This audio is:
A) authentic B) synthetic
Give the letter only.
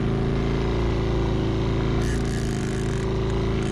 A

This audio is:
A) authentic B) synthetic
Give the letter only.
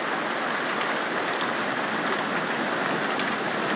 A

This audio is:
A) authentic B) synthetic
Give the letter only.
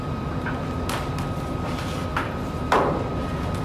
A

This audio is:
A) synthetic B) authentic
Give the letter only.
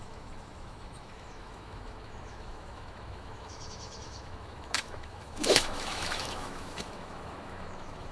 A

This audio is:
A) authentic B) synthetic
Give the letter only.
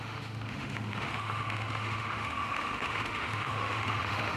B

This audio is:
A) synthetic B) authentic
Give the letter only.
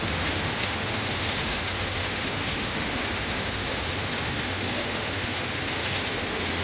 A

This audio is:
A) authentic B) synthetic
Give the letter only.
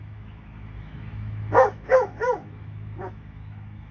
B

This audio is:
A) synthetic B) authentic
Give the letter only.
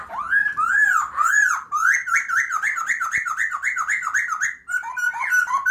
B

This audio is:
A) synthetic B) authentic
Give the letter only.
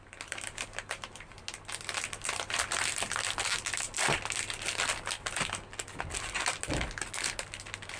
B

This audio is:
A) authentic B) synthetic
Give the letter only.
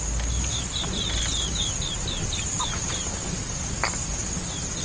A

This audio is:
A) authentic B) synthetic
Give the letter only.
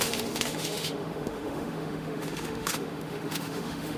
B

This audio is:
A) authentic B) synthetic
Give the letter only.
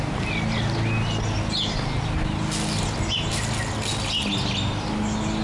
A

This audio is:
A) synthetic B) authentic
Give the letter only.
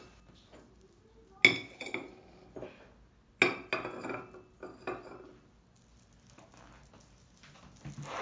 B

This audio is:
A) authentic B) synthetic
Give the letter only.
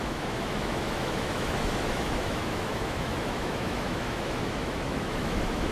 B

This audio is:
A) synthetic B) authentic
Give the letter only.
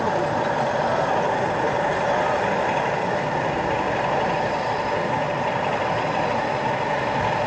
B